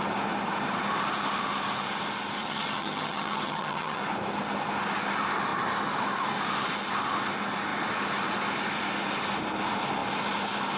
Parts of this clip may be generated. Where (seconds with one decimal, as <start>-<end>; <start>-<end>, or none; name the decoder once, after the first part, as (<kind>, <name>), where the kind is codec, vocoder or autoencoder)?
2.4-4.0 (vocoder, HiFi-GAN)